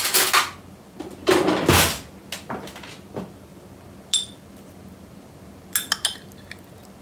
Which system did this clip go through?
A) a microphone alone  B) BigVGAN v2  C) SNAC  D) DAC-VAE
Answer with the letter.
A